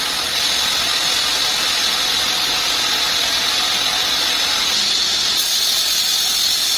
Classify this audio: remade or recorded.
recorded